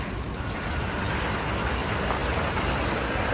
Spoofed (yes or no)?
no